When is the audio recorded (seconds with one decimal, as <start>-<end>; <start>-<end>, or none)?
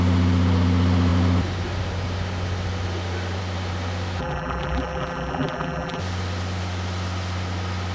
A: 0.0-4.2; 6.0-7.9